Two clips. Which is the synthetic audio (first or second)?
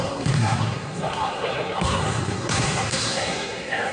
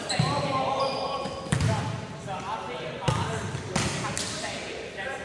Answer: first